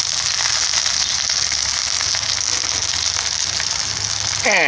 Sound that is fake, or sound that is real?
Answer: real